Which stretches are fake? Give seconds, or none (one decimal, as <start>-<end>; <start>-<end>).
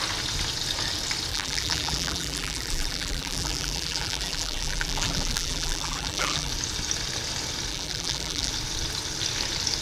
1.3-6.5; 7.7-8.5